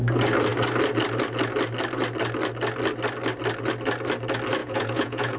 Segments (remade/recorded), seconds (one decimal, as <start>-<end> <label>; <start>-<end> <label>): 0.0-4.6 recorded; 4.6-5.4 remade